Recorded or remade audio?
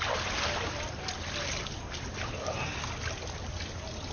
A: recorded